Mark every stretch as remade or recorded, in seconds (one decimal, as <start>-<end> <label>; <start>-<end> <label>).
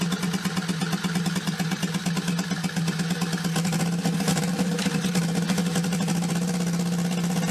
0.0-4.3 recorded; 4.3-5.2 remade; 5.2-7.5 recorded